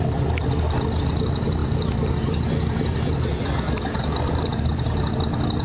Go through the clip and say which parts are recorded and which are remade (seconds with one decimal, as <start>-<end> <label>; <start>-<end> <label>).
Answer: 0.0-5.6 recorded